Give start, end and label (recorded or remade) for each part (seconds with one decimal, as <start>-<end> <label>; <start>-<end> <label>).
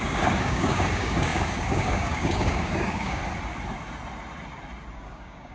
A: 0.0-3.2 remade; 3.2-5.0 recorded; 5.0-5.5 remade